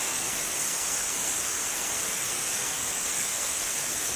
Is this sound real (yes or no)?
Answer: no